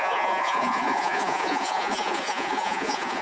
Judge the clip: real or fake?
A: fake